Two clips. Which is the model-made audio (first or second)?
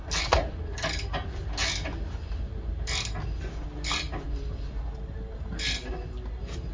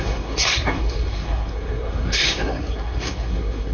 second